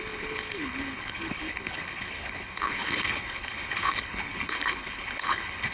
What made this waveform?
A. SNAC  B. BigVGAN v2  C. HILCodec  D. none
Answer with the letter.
C